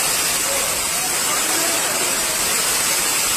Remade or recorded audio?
remade